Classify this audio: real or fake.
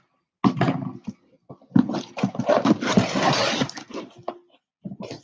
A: real